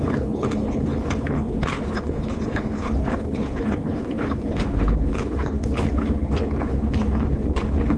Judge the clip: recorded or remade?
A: remade